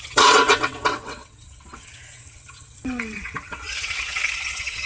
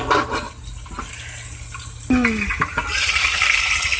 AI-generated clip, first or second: first